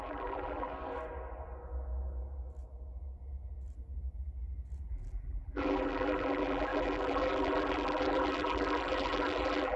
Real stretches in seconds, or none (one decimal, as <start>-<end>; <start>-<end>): 0.7-4.9